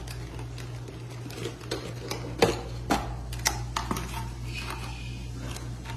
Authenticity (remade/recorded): recorded